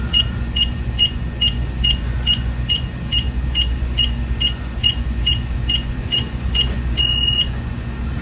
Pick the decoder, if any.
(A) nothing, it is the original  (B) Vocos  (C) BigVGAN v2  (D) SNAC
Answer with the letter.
B